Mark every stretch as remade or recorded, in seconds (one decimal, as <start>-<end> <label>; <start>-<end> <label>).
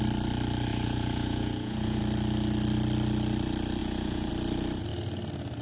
0.0-0.7 recorded; 0.7-2.0 remade; 2.0-3.8 recorded; 3.8-4.3 remade; 4.3-5.6 recorded